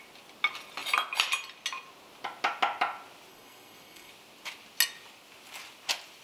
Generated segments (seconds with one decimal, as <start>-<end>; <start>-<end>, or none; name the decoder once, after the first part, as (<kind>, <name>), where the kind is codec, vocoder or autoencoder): 3.3-4.1 (codec, SNAC)